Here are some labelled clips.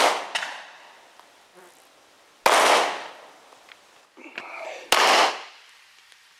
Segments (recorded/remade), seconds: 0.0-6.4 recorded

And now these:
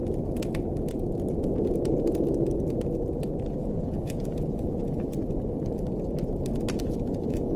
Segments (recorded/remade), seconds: 0.0-3.6 recorded; 3.6-5.2 remade; 5.2-6.8 recorded; 6.8-7.6 remade

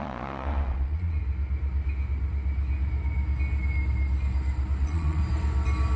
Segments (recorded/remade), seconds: 0.0-1.2 remade; 1.2-4.8 recorded; 4.8-5.2 remade; 5.2-6.0 recorded

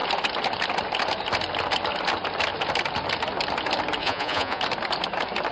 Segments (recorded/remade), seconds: 0.0-4.0 recorded; 4.0-4.6 remade; 4.6-5.5 recorded

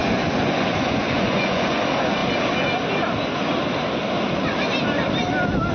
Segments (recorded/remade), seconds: 0.0-1.8 remade; 1.8-5.7 recorded